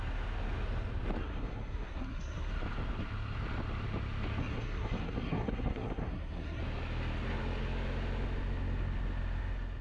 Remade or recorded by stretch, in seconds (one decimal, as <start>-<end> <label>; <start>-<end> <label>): 0.0-1.2 recorded; 1.2-2.5 remade; 2.5-4.4 recorded; 4.4-6.6 remade; 6.6-9.8 recorded